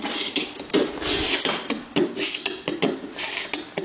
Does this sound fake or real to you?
real